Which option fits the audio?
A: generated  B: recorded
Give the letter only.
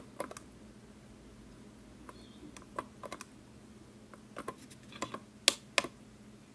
B